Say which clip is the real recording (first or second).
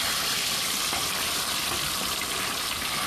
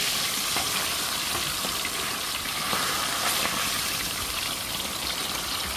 first